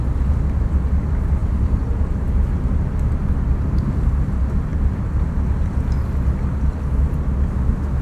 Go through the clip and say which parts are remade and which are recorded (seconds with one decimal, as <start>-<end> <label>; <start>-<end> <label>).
0.0-1.4 recorded; 1.4-2.3 remade; 2.3-4.7 recorded; 4.7-5.3 remade; 5.3-8.0 recorded